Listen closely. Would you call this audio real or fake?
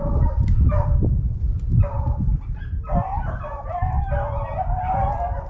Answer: real